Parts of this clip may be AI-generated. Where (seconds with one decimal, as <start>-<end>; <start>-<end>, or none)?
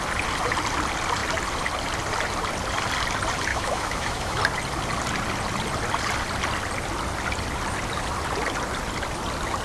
3.5-4.4